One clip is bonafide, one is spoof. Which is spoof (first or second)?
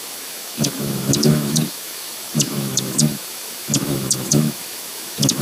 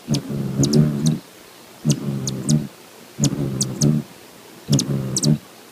first